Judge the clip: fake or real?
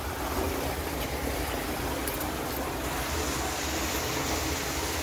real